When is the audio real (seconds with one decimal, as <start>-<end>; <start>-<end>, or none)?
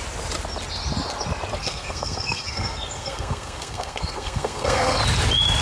0.0-1.6; 5.0-5.6